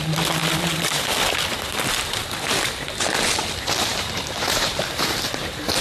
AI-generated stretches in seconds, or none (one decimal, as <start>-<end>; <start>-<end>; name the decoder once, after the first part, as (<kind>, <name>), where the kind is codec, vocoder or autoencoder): 3.9-5.3 (vocoder, BigVGAN v2)